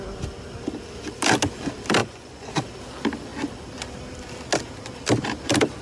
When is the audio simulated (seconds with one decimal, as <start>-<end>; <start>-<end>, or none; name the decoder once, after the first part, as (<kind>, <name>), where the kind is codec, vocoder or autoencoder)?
2.0-2.5 (vocoder, Vocos)